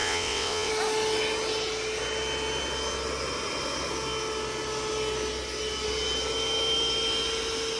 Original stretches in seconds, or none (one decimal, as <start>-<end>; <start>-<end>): 0.7-7.8